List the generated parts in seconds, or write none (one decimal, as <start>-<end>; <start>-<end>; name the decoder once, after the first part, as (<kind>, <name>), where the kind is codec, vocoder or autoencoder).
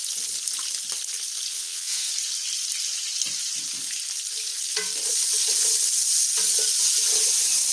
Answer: 1.5-2.1 (vocoder, WaveNeXt)